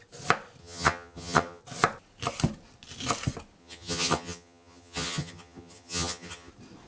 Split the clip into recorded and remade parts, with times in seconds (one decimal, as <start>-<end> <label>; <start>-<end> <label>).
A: 0.0-0.6 recorded; 0.6-1.6 remade; 1.6-3.6 recorded; 3.6-6.5 remade; 6.5-6.9 recorded